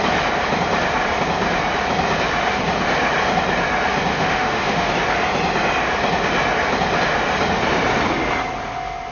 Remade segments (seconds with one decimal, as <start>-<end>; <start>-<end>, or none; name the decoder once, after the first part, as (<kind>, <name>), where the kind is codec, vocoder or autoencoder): 4.1-4.9 (autoencoder, DAC-VAE)